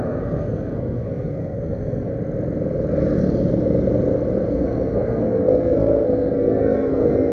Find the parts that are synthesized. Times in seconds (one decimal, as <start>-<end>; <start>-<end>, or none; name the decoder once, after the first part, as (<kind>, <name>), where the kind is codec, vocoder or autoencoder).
0.0-2.1 (codec, SNAC); 4.5-7.3